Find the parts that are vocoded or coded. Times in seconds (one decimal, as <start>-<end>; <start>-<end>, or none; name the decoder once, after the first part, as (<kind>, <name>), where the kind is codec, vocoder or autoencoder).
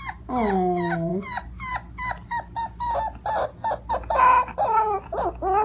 none